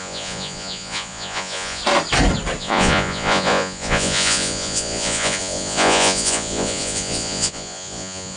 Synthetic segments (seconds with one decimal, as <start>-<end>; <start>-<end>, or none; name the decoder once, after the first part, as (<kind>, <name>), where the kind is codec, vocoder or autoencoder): 0.0-1.8 (vocoder, Vocos); 2.6-8.4